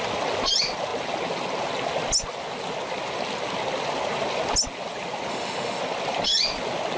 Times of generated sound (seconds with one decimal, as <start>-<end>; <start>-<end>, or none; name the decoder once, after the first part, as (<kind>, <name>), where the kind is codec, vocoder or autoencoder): 5.3-5.8 (autoencoder, DAC-VAE)